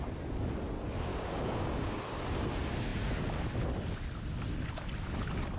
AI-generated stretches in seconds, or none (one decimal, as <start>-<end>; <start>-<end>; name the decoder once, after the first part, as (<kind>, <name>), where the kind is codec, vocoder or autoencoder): 1.1-2.0 (codec, DAC)